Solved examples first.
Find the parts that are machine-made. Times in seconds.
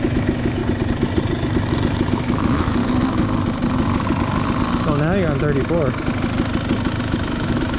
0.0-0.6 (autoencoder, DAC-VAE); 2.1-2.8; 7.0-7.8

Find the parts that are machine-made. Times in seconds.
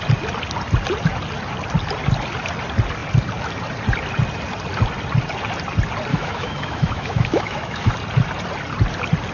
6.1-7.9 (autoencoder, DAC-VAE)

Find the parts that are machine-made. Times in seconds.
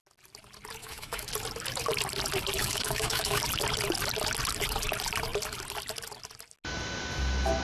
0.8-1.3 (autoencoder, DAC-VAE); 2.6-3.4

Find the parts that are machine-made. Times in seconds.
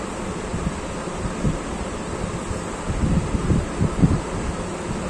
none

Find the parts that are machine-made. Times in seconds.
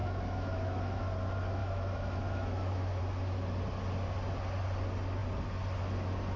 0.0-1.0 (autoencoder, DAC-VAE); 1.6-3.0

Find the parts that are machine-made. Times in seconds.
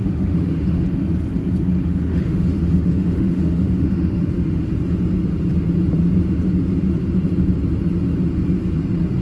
0.0-0.9 (autoencoder, DAC-VAE); 1.9-4.6